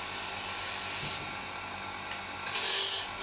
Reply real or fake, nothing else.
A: real